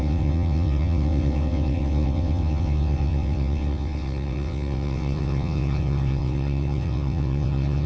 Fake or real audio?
fake